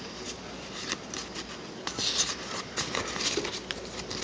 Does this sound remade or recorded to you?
recorded